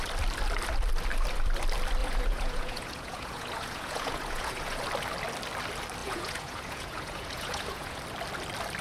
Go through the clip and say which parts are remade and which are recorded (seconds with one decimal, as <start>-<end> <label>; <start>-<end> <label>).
0.0-2.0 recorded; 2.0-4.8 remade; 4.8-6.0 recorded; 6.0-8.0 remade; 8.0-8.8 recorded